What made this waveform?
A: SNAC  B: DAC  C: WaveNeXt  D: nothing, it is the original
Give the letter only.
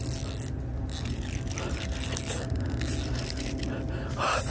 D